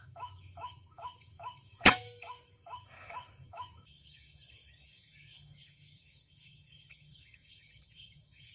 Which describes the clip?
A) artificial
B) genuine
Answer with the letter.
A